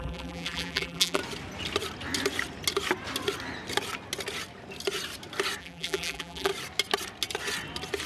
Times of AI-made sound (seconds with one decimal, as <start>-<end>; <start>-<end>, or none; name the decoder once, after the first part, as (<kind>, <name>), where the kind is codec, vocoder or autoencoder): 0.0-1.2 (vocoder, BigVGAN v2); 5.6-6.5